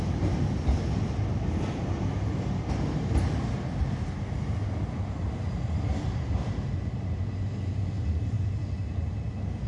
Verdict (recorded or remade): recorded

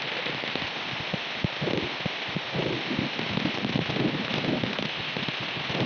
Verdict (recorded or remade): recorded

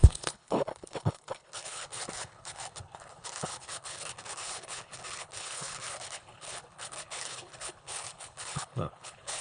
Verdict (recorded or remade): remade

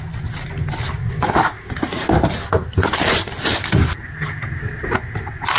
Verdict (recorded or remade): recorded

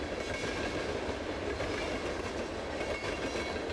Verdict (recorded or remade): recorded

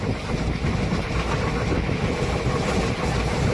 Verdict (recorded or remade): recorded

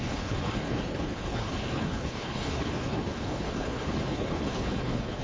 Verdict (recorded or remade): remade